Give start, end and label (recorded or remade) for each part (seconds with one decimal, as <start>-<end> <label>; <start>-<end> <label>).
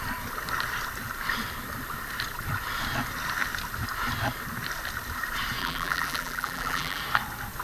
0.0-5.6 recorded; 5.6-7.0 remade; 7.0-7.6 recorded